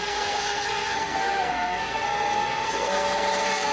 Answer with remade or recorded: remade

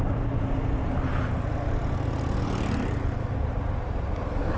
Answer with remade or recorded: recorded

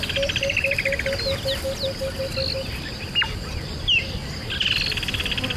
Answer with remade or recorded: recorded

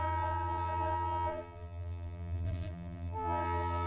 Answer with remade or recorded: remade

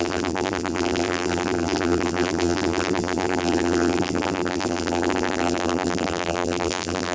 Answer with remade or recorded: remade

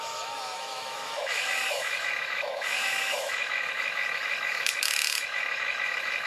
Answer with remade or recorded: remade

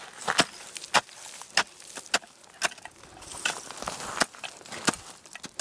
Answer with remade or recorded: recorded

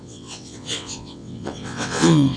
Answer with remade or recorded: remade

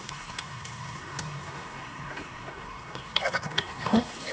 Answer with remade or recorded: remade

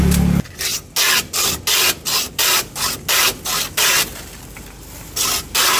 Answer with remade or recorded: recorded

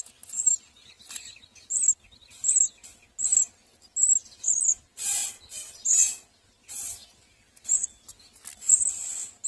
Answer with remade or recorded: recorded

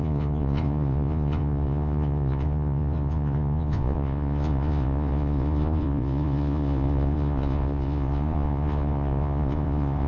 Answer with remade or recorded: remade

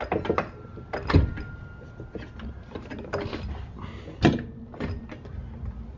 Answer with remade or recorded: recorded